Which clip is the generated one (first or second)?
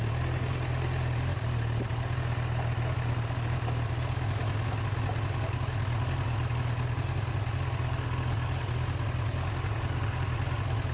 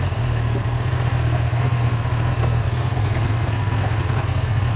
second